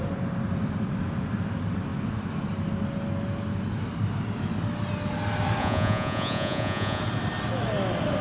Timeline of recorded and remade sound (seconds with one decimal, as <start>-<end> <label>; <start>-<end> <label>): 0.0-5.6 recorded; 5.6-7.0 remade; 7.0-8.2 recorded